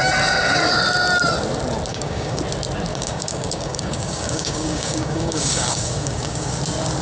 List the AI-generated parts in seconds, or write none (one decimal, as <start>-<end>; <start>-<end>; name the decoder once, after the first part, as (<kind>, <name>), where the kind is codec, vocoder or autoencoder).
1.9-2.4 (codec, DAC); 2.9-6.6